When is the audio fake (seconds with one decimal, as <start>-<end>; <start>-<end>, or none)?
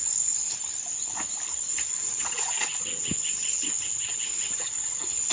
1.8-5.3